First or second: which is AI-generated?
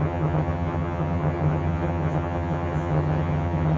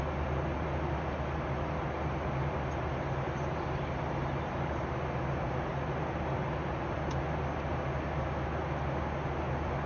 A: first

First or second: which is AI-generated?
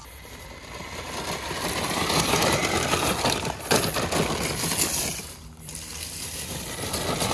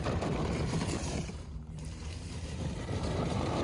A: second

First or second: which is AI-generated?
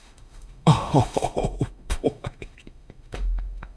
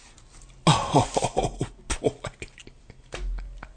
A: first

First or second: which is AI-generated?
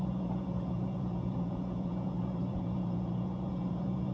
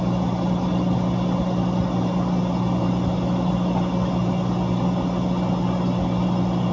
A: first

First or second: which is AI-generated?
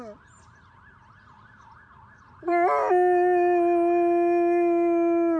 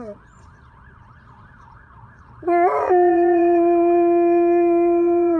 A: second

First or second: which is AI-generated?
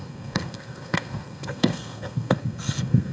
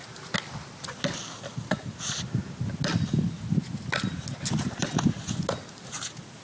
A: first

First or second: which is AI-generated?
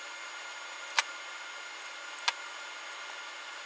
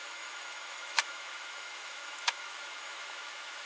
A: second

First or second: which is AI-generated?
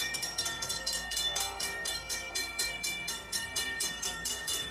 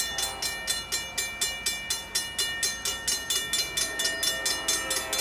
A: first